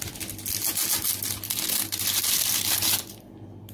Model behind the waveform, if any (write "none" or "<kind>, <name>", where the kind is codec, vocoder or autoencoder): none